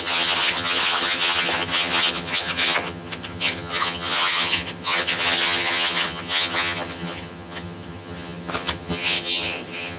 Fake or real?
fake